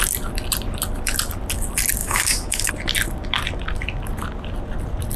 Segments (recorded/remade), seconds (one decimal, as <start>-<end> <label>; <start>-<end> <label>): 0.0-2.0 recorded; 2.0-2.7 remade; 2.7-5.2 recorded